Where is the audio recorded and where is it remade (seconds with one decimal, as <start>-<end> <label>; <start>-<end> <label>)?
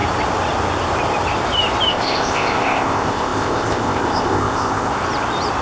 0.0-1.9 recorded; 1.9-4.9 remade; 4.9-5.6 recorded